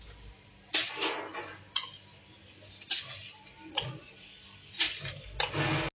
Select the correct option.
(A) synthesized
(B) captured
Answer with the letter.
B